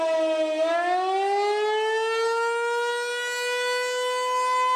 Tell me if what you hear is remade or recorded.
recorded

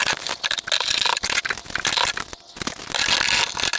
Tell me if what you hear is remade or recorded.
recorded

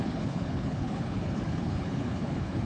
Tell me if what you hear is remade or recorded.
remade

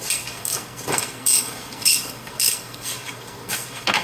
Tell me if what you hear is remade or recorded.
remade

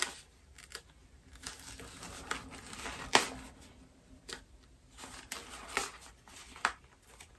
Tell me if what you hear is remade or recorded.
recorded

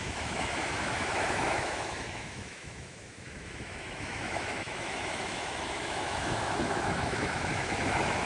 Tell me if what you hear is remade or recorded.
remade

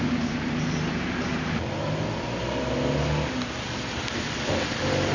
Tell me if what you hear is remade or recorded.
recorded